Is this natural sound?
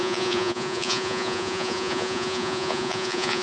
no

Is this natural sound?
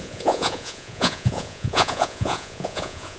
no